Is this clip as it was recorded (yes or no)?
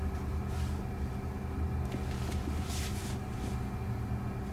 yes